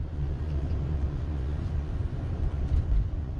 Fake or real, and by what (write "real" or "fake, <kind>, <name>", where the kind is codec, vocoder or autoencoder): fake, vocoder, Vocos